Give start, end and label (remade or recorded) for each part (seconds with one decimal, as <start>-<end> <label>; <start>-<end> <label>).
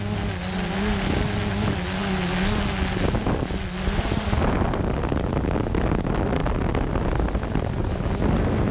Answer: 0.0-8.7 recorded